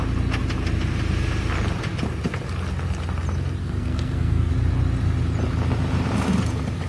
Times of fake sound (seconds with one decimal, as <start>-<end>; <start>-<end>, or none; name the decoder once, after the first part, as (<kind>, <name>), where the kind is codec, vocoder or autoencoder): 3.6-4.5 (codec, SNAC)